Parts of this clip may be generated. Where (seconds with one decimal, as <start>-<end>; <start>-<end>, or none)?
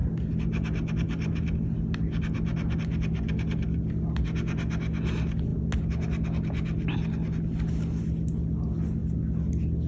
none